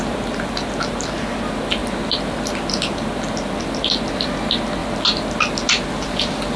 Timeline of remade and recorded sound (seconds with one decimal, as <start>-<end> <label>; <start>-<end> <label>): 0.0-6.6 recorded